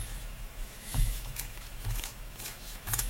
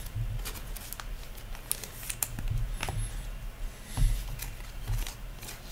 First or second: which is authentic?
second